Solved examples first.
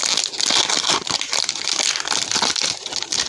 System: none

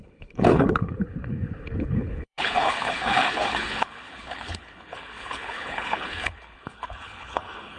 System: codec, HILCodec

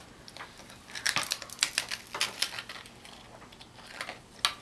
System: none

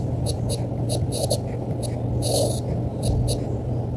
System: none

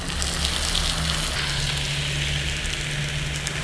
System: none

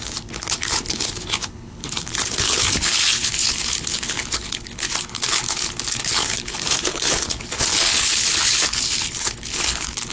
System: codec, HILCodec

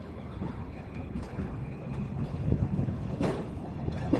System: codec, HILCodec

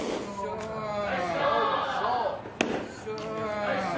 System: none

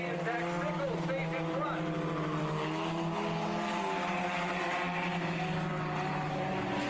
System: none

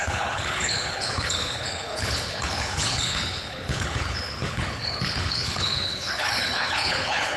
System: codec, HILCodec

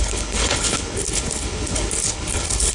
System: codec, HILCodec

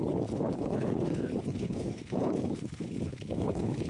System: codec, HILCodec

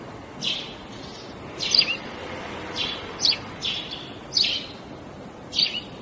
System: none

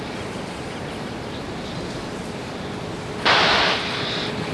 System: none